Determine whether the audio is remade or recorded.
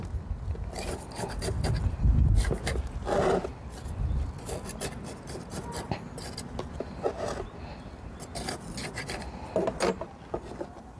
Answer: recorded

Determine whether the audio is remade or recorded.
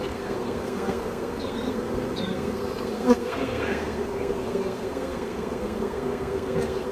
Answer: remade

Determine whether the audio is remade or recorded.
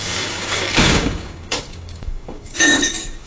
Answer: remade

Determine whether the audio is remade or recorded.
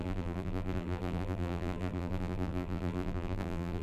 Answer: remade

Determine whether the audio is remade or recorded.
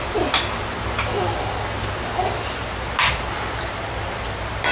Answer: recorded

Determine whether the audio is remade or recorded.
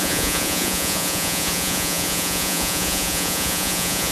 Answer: remade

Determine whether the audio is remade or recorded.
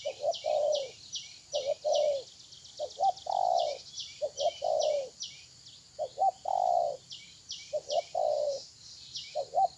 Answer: recorded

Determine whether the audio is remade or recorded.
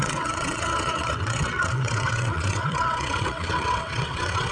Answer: remade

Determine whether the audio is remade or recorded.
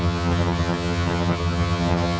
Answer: remade